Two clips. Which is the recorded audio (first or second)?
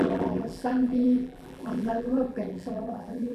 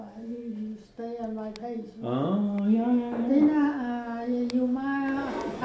second